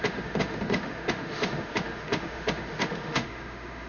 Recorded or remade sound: remade